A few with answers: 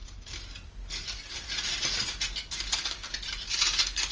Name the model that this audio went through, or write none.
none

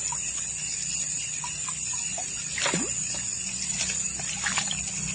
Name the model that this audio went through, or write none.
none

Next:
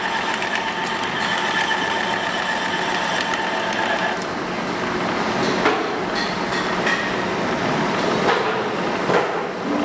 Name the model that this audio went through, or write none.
none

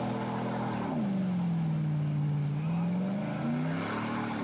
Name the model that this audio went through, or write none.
none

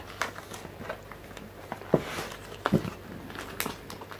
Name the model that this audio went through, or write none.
none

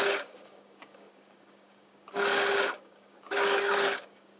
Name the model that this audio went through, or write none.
codec, DAC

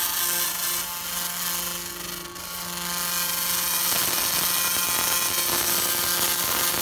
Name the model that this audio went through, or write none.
none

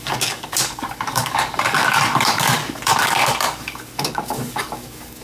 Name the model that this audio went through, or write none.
codec, DAC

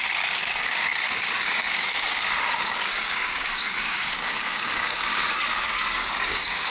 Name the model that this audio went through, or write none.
codec, DAC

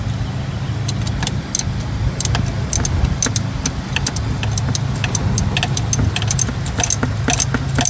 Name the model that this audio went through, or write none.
none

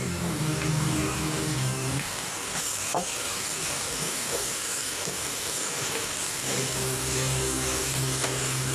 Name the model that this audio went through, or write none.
codec, DAC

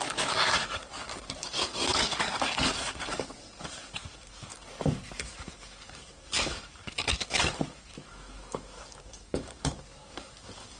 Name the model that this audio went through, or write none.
codec, DAC